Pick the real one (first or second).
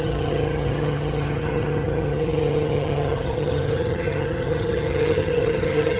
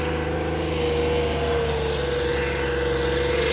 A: second